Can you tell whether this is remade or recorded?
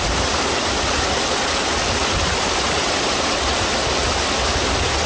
recorded